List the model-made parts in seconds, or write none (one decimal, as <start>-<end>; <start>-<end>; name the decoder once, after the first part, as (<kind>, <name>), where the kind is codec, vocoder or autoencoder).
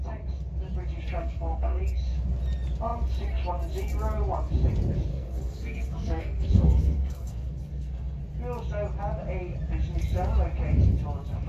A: 1.2-1.8 (codec, SNAC); 5.1-8.2